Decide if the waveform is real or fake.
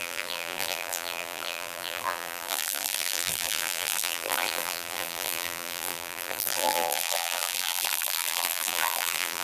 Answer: fake